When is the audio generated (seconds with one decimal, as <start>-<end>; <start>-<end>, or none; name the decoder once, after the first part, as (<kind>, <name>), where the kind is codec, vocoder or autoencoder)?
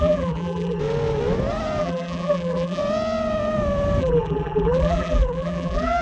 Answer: 0.0-0.8 (vocoder, BigVGAN v2); 1.8-2.8; 4.0-6.0